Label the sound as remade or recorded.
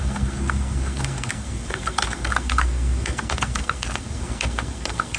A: remade